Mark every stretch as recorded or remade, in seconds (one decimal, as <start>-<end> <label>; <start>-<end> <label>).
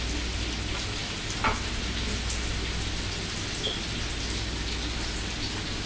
0.0-5.9 recorded